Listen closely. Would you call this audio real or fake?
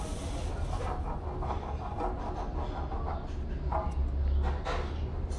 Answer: real